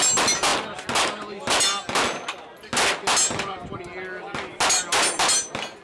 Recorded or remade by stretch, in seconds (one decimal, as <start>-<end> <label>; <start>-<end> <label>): 0.0-5.8 recorded